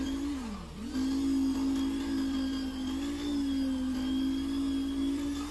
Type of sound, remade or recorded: recorded